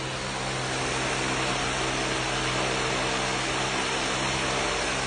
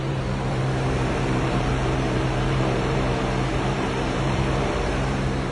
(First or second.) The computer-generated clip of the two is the second